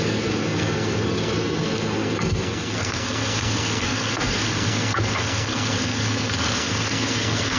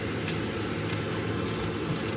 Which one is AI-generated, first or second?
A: first